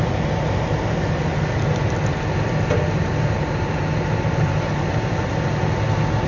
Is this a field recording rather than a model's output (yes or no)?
yes